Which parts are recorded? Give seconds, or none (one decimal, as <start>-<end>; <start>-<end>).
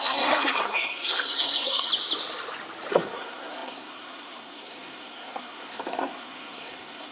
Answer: 1.9-2.9